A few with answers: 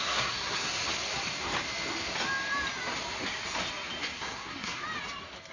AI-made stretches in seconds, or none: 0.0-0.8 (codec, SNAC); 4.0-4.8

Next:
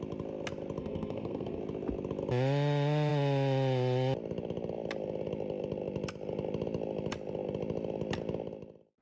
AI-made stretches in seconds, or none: 0.8-1.6 (codec, SNAC)